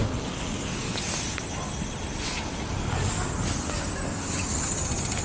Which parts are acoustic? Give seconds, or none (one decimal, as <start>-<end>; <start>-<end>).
0.0-5.2